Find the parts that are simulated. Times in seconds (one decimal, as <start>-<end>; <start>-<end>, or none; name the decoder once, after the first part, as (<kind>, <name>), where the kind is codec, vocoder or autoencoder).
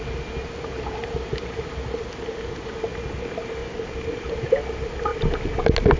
3.6-4.3 (vocoder, BigVGAN v2)